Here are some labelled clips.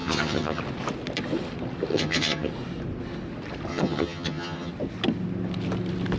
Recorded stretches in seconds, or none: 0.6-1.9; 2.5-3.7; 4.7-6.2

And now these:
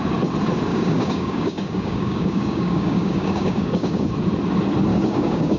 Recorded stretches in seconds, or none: 0.0-0.7; 4.1-4.9

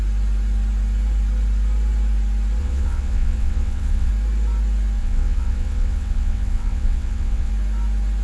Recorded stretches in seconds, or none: 0.0-2.6; 4.1-5.0; 7.5-8.2

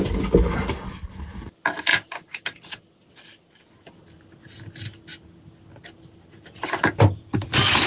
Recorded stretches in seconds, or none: 0.0-7.9